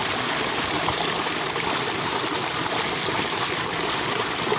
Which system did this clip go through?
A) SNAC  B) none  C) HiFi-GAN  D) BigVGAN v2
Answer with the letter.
B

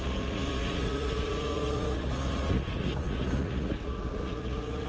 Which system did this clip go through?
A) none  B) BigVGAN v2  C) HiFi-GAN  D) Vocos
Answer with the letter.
D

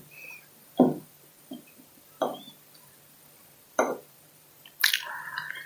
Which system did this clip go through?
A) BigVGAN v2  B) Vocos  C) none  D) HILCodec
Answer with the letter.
A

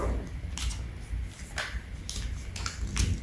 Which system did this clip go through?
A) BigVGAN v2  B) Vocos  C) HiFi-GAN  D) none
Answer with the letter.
D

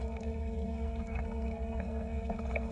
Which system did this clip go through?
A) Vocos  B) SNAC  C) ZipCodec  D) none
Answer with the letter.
B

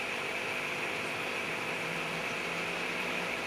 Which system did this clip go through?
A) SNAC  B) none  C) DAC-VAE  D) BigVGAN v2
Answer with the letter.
D